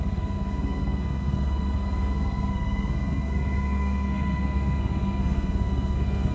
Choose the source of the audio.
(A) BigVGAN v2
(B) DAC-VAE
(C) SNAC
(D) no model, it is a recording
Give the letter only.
C